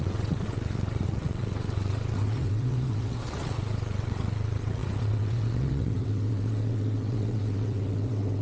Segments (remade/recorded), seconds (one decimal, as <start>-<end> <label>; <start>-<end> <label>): 0.0-8.4 remade